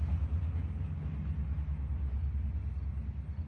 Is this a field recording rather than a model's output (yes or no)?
yes